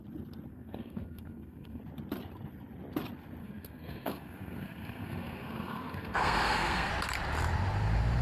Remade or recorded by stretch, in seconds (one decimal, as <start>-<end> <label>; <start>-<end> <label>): 0.0-0.5 recorded; 0.5-1.8 remade; 1.8-3.4 recorded; 3.4-6.9 remade; 6.9-8.2 recorded